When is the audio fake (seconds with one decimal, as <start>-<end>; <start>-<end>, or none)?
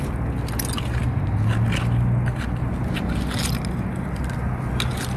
none